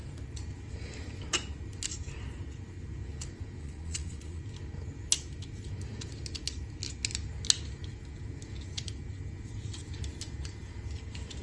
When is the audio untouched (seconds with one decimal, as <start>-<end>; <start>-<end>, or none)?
0.0-3.6; 4.4-11.4